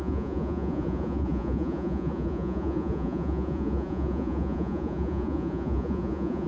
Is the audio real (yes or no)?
no